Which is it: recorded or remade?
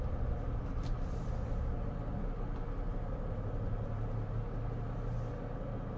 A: recorded